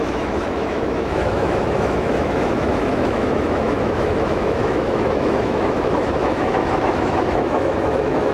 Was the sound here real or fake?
fake